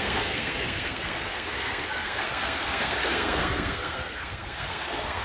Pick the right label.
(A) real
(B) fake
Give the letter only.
B